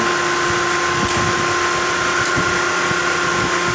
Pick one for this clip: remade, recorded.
recorded